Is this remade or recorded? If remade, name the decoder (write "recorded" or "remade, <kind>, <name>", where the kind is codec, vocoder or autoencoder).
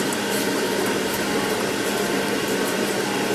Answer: remade, vocoder, BigVGAN v2